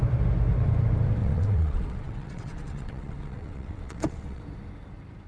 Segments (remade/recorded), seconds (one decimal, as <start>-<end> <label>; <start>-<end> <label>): 0.0-1.2 recorded; 1.2-4.4 remade; 4.4-5.3 recorded